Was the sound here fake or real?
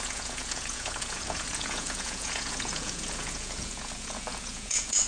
fake